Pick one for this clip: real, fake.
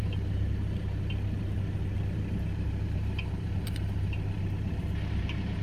fake